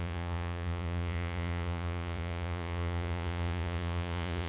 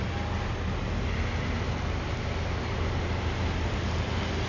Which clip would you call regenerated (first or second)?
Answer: first